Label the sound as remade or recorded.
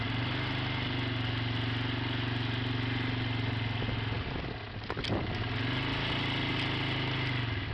recorded